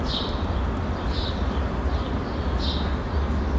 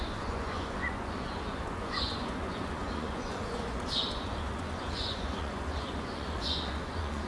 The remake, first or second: second